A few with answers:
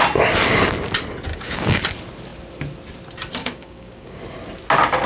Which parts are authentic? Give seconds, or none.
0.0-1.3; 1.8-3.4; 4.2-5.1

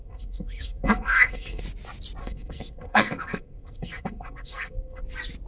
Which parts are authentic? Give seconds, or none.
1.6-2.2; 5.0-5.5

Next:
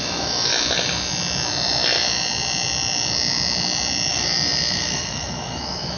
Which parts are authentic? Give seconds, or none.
0.5-4.1